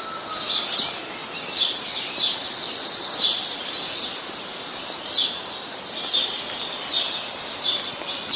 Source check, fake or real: real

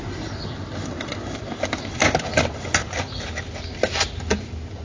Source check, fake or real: real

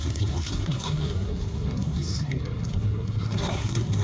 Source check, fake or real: fake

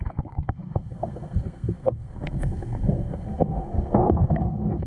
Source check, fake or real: fake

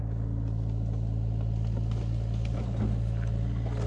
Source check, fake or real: real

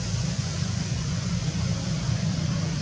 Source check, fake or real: fake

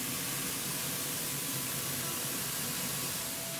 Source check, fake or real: real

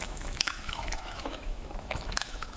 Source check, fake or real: fake